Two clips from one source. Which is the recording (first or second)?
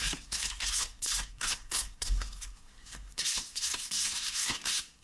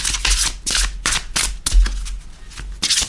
second